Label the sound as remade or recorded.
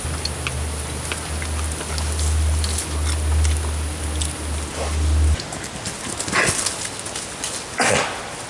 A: recorded